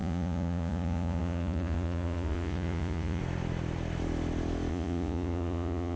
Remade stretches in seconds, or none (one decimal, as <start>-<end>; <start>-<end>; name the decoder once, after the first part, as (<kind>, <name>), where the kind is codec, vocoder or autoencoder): 0.0-3.2 (vocoder, Vocos); 4.7-6.0